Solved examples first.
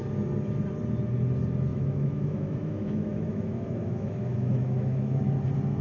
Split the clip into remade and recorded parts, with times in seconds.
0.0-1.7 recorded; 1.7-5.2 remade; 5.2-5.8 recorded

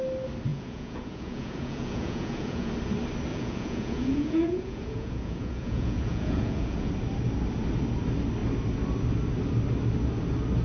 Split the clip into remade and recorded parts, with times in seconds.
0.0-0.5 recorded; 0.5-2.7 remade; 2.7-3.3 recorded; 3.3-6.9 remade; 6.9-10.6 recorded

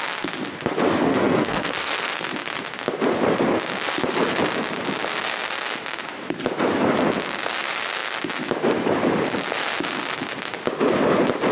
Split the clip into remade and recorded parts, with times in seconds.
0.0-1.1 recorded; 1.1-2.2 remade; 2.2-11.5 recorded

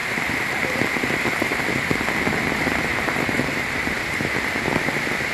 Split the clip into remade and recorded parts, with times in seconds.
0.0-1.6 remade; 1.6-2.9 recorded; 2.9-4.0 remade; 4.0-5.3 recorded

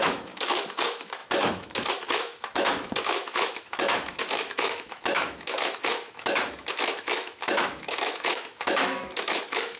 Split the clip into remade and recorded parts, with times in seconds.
0.0-9.8 remade

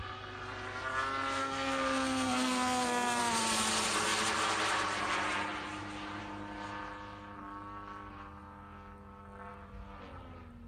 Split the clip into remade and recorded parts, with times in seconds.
0.0-1.4 recorded; 1.4-3.2 remade; 3.2-10.7 recorded

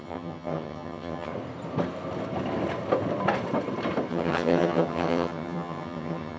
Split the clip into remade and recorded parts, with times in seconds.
0.0-1.3 remade; 1.3-4.1 recorded; 4.1-6.4 remade